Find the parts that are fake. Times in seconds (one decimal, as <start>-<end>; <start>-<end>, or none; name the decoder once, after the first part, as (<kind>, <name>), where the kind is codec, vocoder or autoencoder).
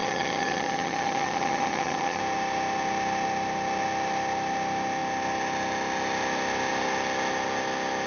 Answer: 0.0-2.2 (vocoder, HiFi-GAN)